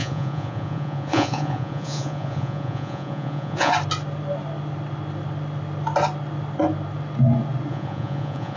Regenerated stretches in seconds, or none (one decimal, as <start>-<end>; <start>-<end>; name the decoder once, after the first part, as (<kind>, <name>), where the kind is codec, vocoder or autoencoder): 0.0-3.7 (vocoder, Vocos); 7.7-8.6